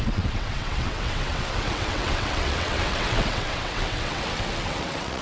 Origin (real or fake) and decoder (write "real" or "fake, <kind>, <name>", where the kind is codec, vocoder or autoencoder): fake, vocoder, WaveNeXt